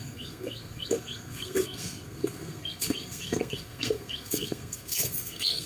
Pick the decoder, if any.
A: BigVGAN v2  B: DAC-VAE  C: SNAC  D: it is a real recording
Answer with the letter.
C